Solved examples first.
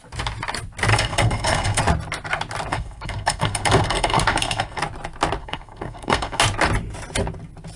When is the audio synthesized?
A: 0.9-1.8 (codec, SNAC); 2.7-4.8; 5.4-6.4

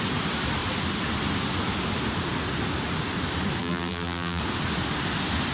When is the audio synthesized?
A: 3.6-4.4 (vocoder, BigVGAN v2)

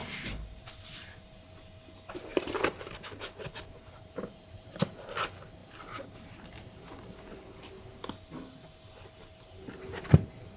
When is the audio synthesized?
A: 0.0-0.7 (vocoder, BigVGAN v2); 2.3-5.0

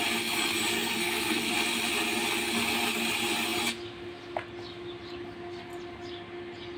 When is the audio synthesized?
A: 0.7-1.5 (codec, SNAC)

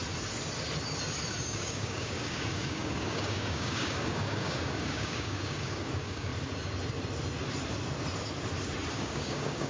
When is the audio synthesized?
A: 1.4-6.3 (codec, DAC); 8.9-9.7

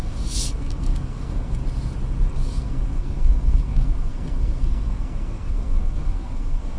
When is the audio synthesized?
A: 0.0-1.6 (codec, SNAC); 2.3-6.8